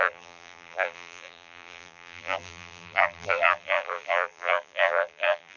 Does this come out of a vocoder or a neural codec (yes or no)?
yes